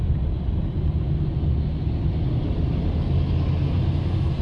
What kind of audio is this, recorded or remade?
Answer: recorded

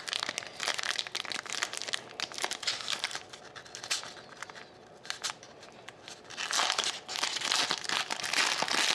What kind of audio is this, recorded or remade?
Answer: recorded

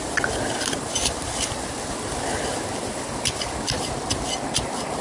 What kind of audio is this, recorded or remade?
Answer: recorded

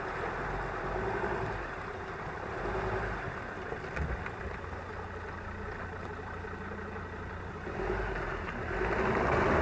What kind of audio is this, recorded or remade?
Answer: recorded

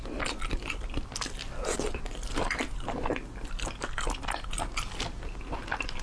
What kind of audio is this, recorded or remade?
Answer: recorded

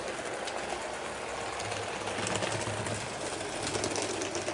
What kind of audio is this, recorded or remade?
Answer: recorded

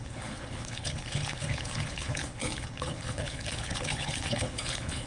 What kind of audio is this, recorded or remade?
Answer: remade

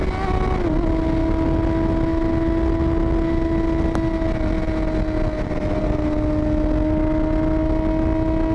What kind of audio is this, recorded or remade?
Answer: recorded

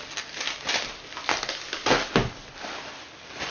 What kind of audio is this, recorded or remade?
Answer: recorded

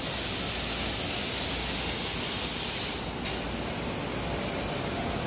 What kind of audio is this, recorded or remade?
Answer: recorded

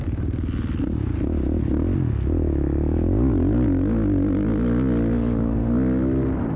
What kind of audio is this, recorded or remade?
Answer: recorded